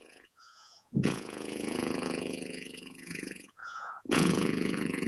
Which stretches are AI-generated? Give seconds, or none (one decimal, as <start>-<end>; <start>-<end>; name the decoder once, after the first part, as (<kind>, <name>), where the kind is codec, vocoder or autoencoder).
0.0-5.1 (vocoder, Vocos)